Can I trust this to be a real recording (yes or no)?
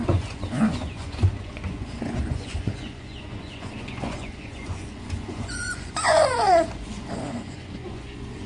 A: no